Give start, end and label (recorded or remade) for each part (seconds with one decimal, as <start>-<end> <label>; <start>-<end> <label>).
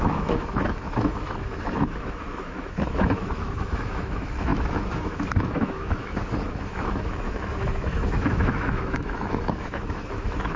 0.0-10.6 remade